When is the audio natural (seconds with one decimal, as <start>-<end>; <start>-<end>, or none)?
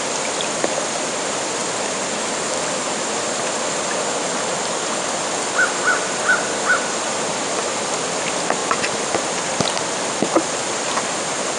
0.0-11.6